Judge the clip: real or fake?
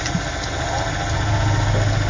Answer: real